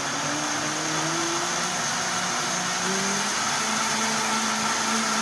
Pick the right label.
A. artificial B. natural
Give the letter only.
B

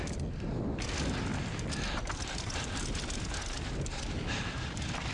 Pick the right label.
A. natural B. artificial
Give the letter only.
A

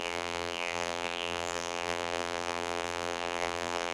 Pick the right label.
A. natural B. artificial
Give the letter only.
B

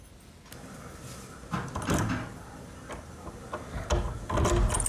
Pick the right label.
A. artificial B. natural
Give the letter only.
B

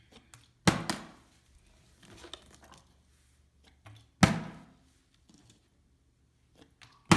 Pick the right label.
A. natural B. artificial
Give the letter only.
A